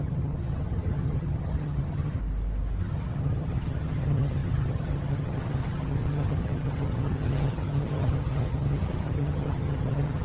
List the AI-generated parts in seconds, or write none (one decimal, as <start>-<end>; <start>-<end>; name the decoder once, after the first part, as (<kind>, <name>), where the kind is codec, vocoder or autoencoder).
0.0-2.2 (vocoder, HiFi-GAN); 2.8-10.2

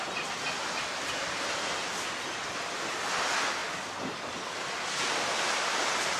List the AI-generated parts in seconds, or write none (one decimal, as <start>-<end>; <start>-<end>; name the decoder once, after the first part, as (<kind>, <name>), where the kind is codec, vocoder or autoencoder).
none

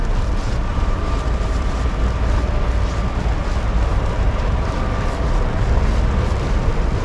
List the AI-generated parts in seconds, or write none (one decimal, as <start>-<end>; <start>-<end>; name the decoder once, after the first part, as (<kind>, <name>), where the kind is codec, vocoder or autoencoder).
0.7-2.0 (vocoder, BigVGAN v2); 3.9-4.7

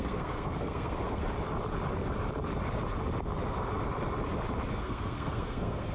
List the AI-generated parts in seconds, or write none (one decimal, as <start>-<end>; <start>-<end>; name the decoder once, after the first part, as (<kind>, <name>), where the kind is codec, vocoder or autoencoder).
0.0-1.2 (codec, SNAC); 4.7-5.9

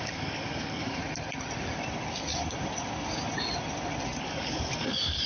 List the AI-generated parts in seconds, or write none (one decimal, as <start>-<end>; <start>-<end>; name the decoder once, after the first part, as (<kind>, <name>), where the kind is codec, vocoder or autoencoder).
0.0-1.0 (codec, DAC); 4.2-5.3